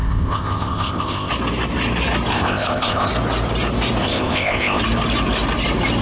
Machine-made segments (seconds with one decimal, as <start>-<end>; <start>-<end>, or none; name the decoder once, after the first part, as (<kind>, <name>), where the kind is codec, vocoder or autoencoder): 0.0-1.3 (codec, ZipCodec); 2.3-3.1; 4.0-4.8